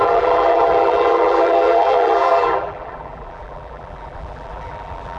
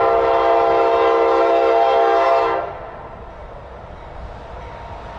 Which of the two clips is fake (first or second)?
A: first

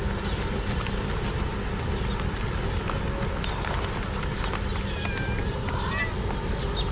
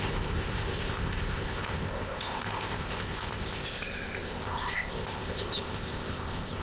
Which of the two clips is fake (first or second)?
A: second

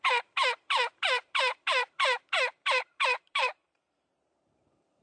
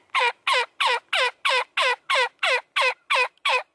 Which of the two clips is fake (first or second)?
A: first